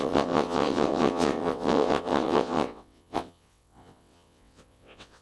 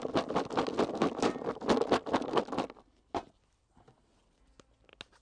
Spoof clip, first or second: first